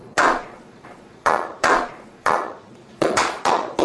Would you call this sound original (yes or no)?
no